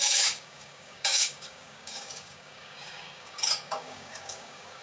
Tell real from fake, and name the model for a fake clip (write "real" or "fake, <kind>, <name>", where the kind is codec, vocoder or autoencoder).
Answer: fake, codec, DAC